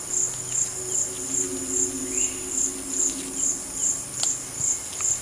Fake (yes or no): no